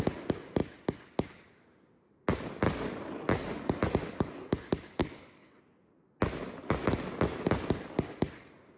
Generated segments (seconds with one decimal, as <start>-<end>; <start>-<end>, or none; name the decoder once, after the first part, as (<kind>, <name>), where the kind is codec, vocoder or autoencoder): 5.0-5.6 (codec, HILCodec)